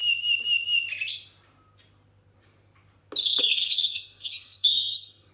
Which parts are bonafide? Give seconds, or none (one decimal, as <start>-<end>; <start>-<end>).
0.0-3.4